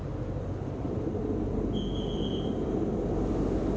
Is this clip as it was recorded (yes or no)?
yes